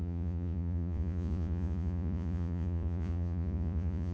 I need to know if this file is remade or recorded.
remade